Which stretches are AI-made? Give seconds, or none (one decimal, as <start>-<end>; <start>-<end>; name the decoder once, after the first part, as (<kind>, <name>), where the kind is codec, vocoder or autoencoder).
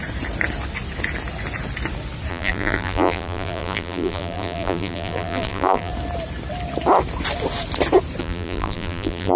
2.3-5.9 (vocoder, BigVGAN v2); 8.2-9.4